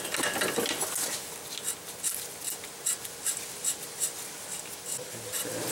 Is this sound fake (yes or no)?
no